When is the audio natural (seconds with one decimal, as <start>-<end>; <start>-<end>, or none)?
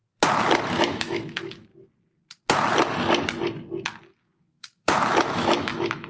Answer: 0.0-0.8; 1.7-4.2